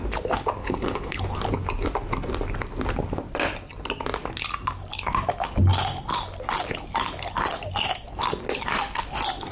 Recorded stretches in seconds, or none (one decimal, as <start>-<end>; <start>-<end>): 0.0-0.6; 1.2-9.5